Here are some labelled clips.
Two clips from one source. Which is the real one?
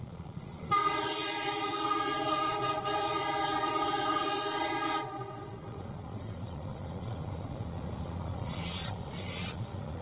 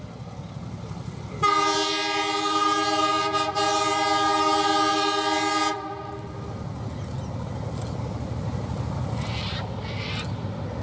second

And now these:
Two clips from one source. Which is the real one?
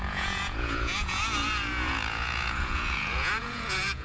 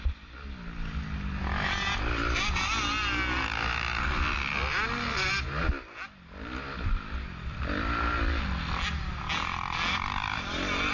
second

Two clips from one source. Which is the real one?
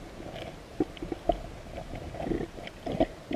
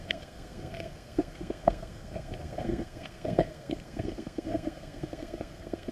first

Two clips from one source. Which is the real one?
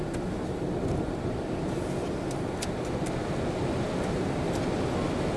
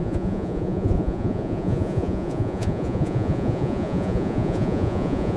first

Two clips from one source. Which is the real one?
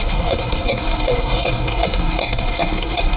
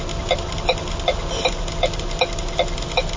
second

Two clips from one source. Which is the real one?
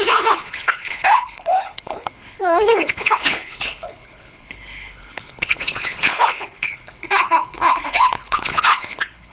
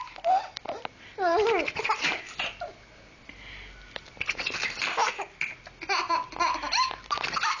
second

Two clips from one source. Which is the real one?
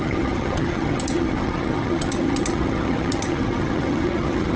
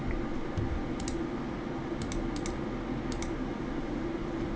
second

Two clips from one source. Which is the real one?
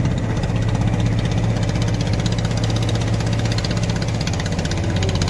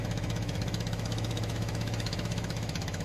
first